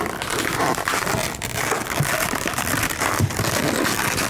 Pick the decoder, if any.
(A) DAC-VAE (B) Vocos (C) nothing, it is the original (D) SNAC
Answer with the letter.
C